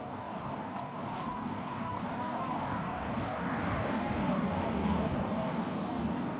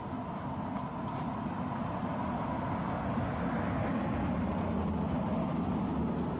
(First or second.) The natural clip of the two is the second